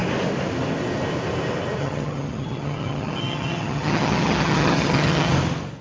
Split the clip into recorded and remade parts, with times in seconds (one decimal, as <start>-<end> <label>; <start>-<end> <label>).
0.0-1.8 recorded; 1.8-5.3 remade; 5.3-5.8 recorded